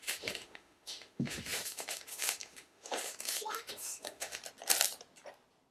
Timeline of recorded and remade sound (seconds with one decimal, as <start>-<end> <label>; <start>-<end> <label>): 0.0-4.4 remade; 4.4-5.7 recorded